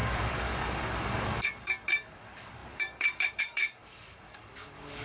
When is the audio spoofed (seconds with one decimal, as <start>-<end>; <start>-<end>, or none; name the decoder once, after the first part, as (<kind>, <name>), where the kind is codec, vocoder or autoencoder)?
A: 0.0-5.0 (codec, DAC)